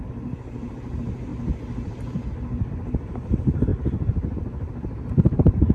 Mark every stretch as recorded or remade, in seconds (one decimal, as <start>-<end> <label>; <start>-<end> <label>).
0.0-1.3 remade; 1.3-2.7 recorded; 2.7-3.7 remade; 3.7-5.1 recorded; 5.1-5.7 remade